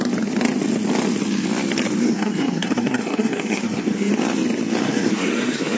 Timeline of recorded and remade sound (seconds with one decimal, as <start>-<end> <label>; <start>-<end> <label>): 0.0-2.0 recorded; 2.0-4.1 remade; 4.1-4.8 recorded; 4.8-5.8 remade